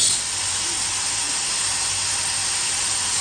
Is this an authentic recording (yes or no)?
yes